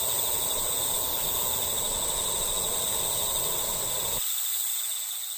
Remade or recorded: recorded